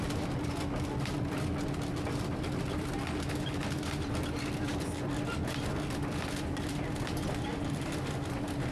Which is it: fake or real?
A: real